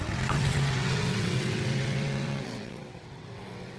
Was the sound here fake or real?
fake